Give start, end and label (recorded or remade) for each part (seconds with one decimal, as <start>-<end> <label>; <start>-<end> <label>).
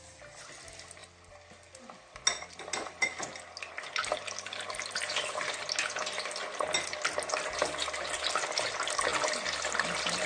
0.0-10.3 recorded